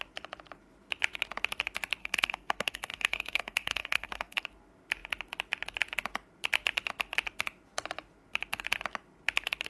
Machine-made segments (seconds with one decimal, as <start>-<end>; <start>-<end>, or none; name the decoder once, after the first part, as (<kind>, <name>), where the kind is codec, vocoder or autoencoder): 2.0-4.4 (codec, SNAC)